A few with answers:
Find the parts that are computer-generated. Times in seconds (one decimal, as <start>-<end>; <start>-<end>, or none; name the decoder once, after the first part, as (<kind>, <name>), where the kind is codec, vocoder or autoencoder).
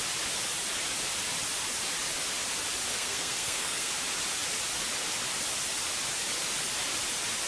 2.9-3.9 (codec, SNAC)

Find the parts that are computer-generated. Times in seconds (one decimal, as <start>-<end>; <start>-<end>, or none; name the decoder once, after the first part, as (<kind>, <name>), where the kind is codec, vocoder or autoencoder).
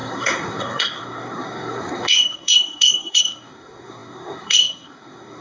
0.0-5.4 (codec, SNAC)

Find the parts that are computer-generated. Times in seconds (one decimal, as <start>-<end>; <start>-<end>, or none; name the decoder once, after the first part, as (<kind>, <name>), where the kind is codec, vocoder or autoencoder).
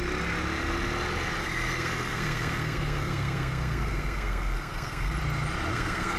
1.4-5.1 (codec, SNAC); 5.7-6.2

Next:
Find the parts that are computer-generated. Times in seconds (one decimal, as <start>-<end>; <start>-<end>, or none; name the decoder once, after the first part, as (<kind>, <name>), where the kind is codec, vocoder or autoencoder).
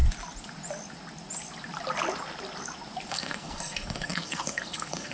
3.1-5.1 (codec, SNAC)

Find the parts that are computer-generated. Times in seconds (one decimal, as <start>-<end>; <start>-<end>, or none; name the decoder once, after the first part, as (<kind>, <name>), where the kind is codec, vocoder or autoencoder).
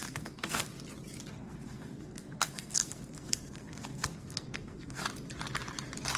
0.0-0.7 (codec, SNAC); 1.3-5.0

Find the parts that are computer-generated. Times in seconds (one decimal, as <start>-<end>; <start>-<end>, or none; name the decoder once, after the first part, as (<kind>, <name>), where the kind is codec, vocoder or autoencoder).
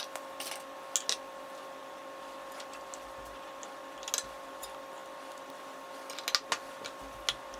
none